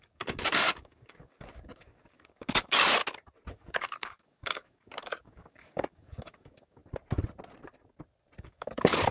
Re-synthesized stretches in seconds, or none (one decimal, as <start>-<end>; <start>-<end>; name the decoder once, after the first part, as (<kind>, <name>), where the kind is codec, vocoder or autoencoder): 0.0-3.0 (codec, DAC); 3.5-6.8; 8.4-9.1